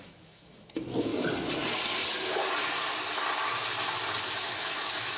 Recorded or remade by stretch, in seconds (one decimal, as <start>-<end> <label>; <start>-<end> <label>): 0.0-1.1 remade; 1.1-4.2 recorded; 4.2-5.2 remade